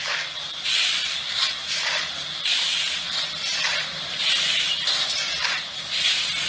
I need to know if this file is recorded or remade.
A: recorded